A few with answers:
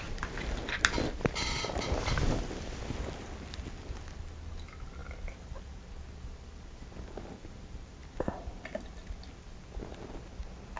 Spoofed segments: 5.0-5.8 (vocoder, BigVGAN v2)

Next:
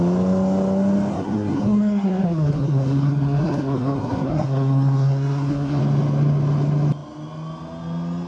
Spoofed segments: 1.1-5.8 (codec, SNAC)

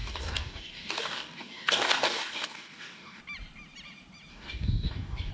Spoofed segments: 0.0-3.2 (codec, DAC); 4.3-5.3

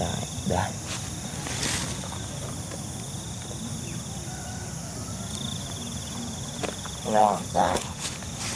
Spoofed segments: 7.2-8.1 (codec, HILCodec)

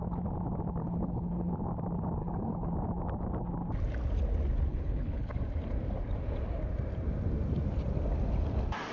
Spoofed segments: 0.8-1.5 (codec, HILCodec); 2.2-2.7; 4.7-5.3

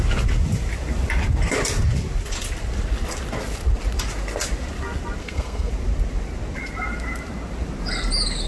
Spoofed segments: 5.2-5.7 (codec, SNAC)